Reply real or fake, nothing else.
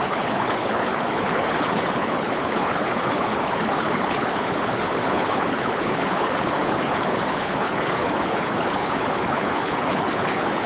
fake